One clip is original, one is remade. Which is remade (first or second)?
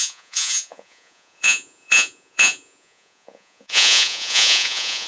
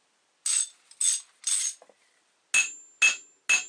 first